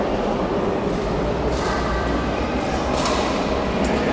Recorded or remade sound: remade